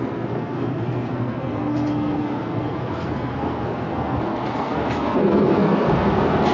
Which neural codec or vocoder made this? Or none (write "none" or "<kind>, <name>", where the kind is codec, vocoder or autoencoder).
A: codec, SNAC